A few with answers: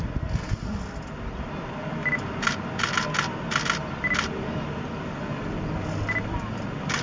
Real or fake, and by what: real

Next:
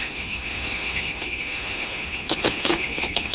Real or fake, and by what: fake, autoencoder, DAC-VAE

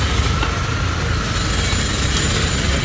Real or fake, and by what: real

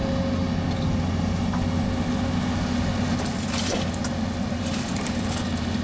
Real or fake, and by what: real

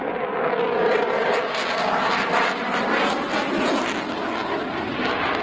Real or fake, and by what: real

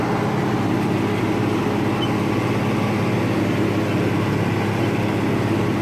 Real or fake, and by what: real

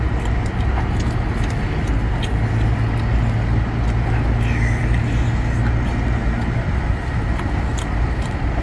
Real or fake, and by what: real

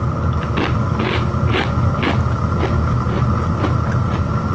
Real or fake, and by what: real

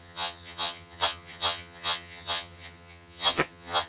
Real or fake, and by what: fake, vocoder, HiFi-GAN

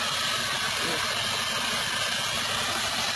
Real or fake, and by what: real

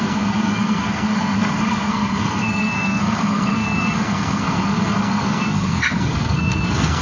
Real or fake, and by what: fake, codec, SNAC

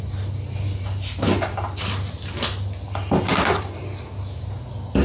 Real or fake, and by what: real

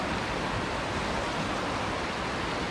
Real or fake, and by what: real